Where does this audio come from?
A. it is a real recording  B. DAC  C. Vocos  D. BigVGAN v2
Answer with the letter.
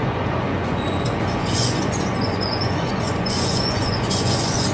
C